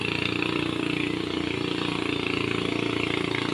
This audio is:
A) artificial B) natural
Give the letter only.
B